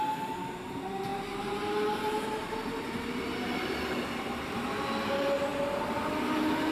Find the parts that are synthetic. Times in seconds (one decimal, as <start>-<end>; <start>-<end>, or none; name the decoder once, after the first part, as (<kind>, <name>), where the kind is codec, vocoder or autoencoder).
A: none